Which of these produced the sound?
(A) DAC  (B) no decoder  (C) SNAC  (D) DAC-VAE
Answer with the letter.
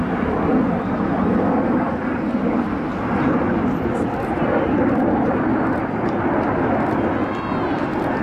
B